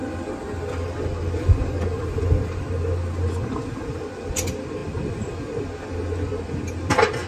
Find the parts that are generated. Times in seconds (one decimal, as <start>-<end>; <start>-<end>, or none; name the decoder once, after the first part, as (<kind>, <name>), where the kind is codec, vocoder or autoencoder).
none